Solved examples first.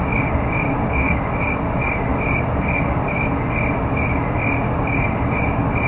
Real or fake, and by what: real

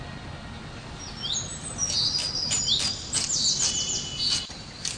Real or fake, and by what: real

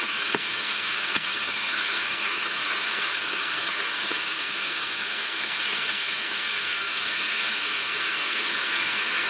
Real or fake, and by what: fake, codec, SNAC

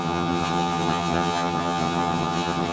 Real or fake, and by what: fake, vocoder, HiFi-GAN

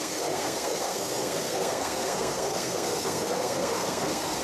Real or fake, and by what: fake, codec, SNAC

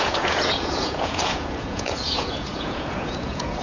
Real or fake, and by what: fake, vocoder, Vocos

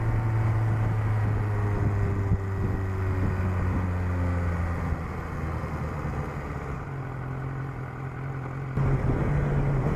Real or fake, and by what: real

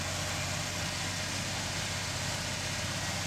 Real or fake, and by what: real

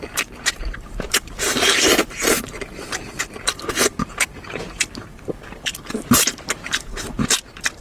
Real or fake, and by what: fake, vocoder, BigVGAN v2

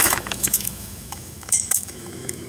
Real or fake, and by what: fake, autoencoder, DAC-VAE